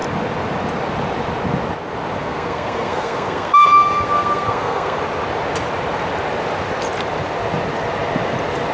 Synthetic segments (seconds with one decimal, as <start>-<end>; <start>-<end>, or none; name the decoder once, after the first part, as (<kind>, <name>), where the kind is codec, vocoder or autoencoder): 2.2-5.0 (codec, SNAC)